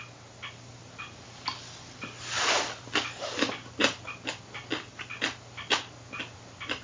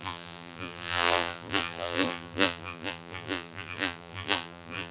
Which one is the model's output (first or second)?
second